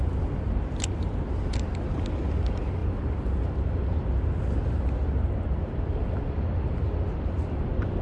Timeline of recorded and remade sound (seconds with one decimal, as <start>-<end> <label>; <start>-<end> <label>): 0.0-8.0 recorded